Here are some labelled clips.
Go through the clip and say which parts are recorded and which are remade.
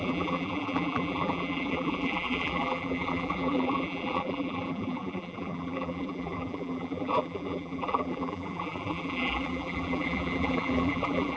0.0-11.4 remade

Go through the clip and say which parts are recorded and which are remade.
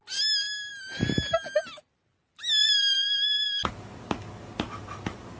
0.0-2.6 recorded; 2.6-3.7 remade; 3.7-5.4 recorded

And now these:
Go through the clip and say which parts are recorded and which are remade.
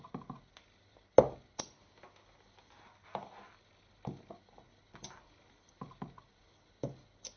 0.0-7.4 recorded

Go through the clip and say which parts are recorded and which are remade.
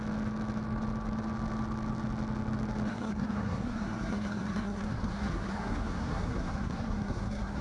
0.0-2.9 recorded; 2.9-7.6 remade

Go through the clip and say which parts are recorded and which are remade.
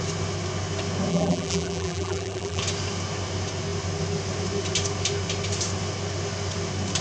0.0-1.1 recorded; 1.1-2.6 remade; 2.6-7.0 recorded